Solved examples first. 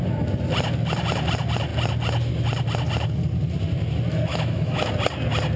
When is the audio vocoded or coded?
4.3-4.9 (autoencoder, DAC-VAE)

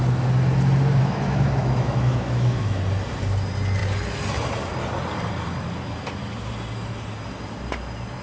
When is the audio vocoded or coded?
1.0-2.8 (autoencoder, DAC-VAE)

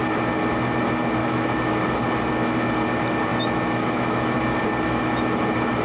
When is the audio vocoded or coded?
1.2-1.7 (autoencoder, DAC-VAE); 3.3-4.6

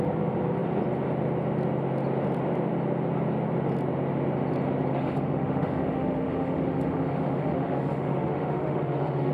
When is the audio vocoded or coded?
4.9-9.3 (autoencoder, DAC-VAE)

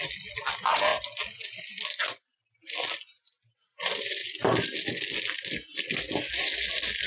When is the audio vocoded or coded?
none